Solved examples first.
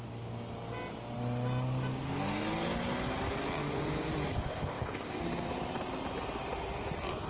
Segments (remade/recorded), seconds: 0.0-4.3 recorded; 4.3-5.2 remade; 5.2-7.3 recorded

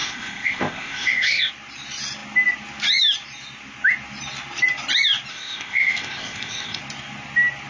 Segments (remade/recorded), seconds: 0.0-1.5 remade; 1.5-5.3 recorded; 5.3-6.8 remade; 6.8-7.7 recorded

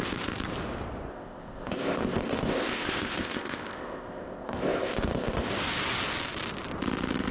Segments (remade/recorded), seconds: 0.0-1.1 recorded; 1.1-5.5 remade; 5.5-7.3 recorded